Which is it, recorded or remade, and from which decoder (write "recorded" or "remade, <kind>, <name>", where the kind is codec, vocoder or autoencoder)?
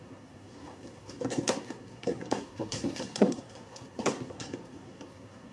remade, codec, SNAC